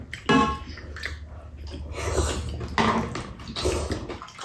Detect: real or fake real